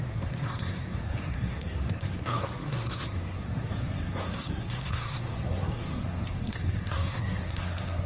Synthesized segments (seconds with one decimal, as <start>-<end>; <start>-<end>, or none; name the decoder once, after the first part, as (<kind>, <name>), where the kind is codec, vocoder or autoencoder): 0.0-8.1 (codec, SNAC)